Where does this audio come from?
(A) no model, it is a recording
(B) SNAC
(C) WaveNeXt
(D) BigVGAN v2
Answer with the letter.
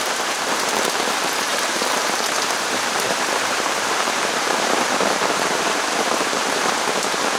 D